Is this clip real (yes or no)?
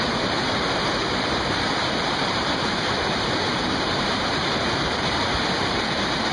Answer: no